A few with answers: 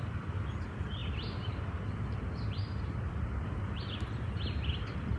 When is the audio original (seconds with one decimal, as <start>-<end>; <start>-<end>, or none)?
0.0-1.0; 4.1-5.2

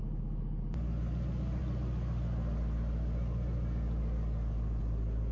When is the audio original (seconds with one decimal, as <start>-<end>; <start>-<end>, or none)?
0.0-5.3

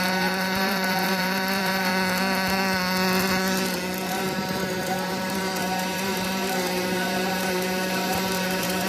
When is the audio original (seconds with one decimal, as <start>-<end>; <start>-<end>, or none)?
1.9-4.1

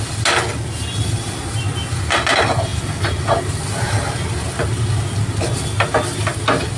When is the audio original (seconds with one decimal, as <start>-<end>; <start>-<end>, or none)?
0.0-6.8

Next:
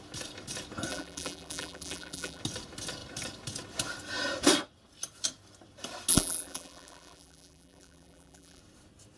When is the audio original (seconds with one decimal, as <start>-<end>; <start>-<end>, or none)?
0.0-0.9; 2.4-6.1; 8.6-9.2

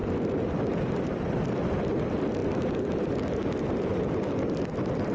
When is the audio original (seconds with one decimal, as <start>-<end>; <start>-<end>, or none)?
none